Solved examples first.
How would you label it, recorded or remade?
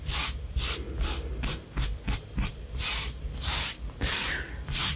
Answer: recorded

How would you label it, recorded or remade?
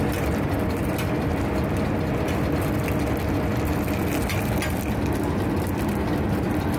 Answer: recorded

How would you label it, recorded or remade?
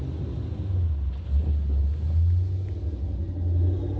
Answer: recorded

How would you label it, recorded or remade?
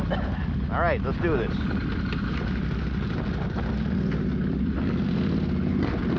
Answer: recorded